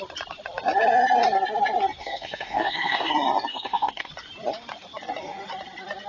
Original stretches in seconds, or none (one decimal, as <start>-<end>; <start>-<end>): 0.0-2.0; 3.1-3.5; 4.1-6.1